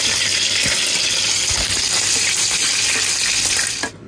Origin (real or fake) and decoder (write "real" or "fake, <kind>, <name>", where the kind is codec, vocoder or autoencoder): real